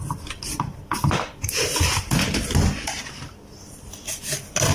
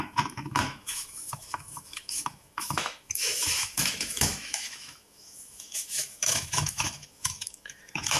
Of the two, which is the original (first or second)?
first